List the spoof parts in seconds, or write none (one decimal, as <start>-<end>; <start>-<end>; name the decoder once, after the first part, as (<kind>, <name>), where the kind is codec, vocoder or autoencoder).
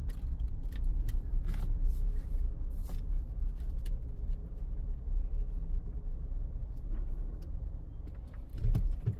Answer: 0.0-1.3 (vocoder, BigVGAN v2); 2.8-5.3; 8.5-9.2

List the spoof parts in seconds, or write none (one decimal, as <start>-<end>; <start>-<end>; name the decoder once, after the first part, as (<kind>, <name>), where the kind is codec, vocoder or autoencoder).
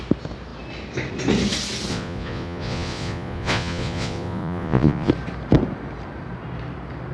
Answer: 1.9-5.1 (vocoder, Vocos)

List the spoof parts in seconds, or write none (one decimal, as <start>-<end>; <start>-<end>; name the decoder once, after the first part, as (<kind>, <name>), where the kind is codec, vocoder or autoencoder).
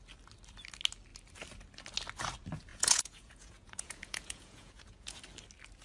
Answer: 2.7-5.2 (vocoder, Vocos)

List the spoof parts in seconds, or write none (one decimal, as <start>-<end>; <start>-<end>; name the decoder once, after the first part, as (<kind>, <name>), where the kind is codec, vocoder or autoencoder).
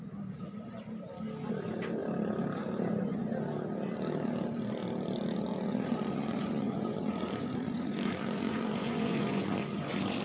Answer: 5.7-10.2 (vocoder, Vocos)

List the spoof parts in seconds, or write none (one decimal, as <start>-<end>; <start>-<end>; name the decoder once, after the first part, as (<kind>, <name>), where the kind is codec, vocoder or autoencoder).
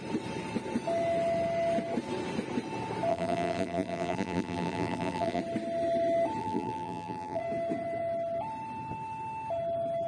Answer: 3.1-5.4 (vocoder, BigVGAN v2); 6.4-7.4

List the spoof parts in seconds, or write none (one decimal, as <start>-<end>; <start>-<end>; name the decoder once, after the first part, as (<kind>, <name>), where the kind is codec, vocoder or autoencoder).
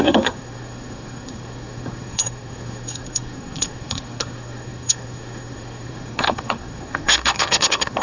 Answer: 0.0-8.0 (codec, SNAC)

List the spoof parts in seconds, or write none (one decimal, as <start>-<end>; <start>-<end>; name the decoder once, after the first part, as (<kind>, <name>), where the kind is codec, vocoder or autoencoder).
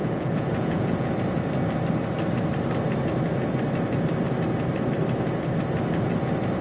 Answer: 0.0-1.1 (vocoder, Vocos)